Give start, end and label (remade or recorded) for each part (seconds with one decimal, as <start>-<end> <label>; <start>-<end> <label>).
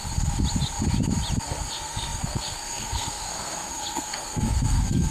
0.0-1.7 recorded; 1.7-5.1 remade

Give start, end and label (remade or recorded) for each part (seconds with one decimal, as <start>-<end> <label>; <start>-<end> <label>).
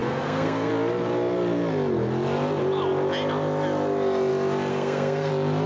0.0-0.7 remade; 0.7-4.7 recorded; 4.7-5.3 remade; 5.3-5.7 recorded